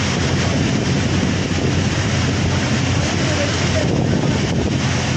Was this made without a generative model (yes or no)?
yes